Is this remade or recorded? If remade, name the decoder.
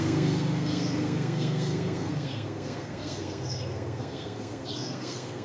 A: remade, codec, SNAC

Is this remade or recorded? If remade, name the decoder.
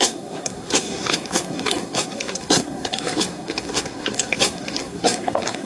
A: remade, codec, SNAC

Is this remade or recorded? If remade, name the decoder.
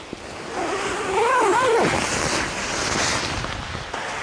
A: recorded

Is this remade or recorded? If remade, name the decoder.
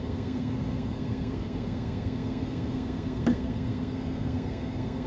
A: remade, codec, SNAC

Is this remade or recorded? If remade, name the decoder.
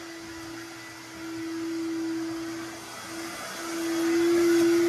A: recorded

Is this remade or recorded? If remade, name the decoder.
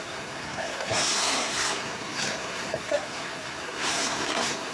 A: remade, codec, SNAC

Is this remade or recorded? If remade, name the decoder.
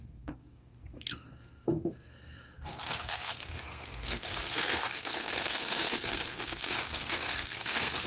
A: remade, codec, SNAC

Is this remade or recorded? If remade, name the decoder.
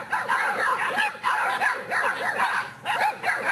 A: recorded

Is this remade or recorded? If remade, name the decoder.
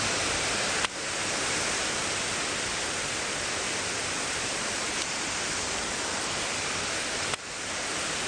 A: recorded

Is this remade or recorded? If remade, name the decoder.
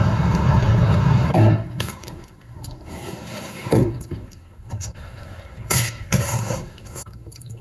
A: remade, codec, SNAC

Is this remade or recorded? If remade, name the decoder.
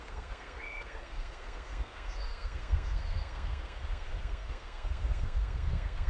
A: remade, codec, SNAC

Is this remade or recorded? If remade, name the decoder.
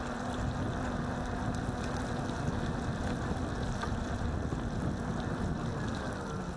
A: recorded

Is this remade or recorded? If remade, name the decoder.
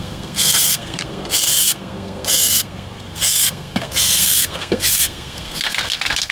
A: remade, codec, SNAC